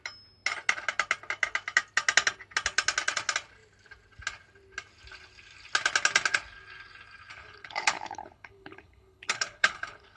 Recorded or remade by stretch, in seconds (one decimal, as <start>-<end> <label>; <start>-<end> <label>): 0.0-7.3 recorded; 7.3-10.2 remade